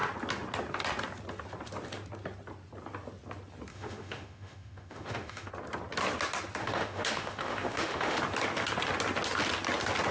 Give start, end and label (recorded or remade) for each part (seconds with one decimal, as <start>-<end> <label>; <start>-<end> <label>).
0.0-3.7 recorded; 3.7-5.5 remade; 5.5-6.6 recorded; 6.6-8.2 remade; 8.2-10.1 recorded

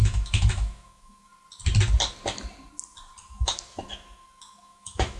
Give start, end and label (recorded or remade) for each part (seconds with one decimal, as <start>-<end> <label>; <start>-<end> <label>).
0.0-1.3 remade; 1.3-3.2 recorded; 3.2-5.2 remade

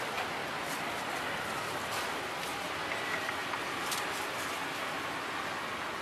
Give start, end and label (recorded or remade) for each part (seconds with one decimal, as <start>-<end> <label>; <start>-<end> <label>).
0.0-6.0 recorded

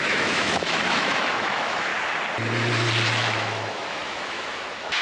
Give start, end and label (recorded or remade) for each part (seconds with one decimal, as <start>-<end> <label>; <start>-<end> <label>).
0.0-1.9 remade; 1.9-3.1 recorded; 3.1-5.0 remade

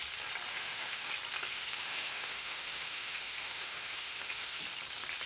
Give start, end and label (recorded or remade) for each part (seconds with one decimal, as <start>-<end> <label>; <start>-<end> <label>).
0.0-0.5 recorded; 0.5-1.1 remade; 1.1-1.5 recorded; 1.5-4.6 remade; 4.6-5.2 recorded